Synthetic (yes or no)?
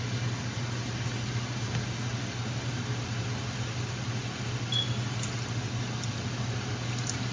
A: no